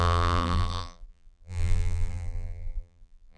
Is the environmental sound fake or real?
fake